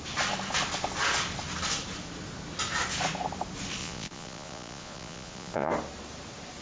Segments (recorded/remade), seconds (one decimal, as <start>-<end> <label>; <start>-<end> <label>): 0.0-3.8 recorded; 3.8-5.7 remade; 5.7-6.6 recorded